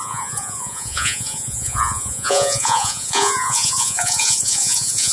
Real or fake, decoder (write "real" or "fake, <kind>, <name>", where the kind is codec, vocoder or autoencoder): fake, vocoder, Vocos